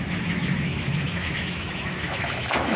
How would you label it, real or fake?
fake